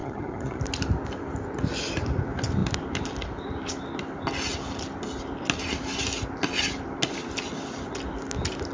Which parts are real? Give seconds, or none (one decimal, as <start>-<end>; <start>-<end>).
0.6-8.7